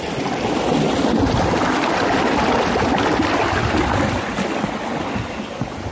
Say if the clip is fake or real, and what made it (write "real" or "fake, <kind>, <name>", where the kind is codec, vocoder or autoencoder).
real